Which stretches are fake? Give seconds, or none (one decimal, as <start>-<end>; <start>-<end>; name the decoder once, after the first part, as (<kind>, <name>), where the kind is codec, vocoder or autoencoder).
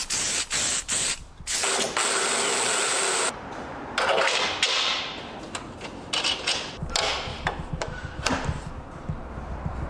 0.7-1.3 (vocoder, BigVGAN v2); 7.3-9.9